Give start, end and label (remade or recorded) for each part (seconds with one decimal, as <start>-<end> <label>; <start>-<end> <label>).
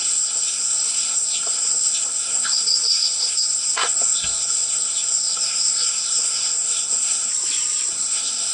0.0-7.3 remade; 7.3-7.9 recorded; 7.9-8.5 remade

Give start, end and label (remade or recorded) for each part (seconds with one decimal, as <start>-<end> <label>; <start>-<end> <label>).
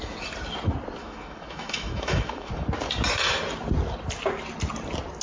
0.0-1.0 recorded; 1.0-2.5 remade; 2.5-5.2 recorded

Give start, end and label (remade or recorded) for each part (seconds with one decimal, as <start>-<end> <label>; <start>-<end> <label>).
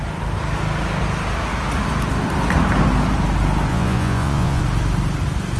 0.0-3.7 recorded; 3.7-4.6 remade; 4.6-5.6 recorded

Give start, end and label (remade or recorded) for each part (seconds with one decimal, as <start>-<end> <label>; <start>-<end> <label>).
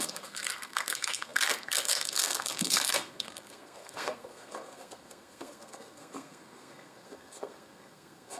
0.0-8.4 remade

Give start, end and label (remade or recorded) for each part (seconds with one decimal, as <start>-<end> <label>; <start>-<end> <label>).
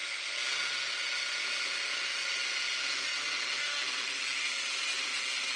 0.0-5.6 recorded